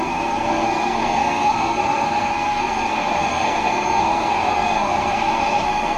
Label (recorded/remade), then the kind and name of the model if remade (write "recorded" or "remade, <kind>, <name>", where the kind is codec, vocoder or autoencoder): remade, codec, SNAC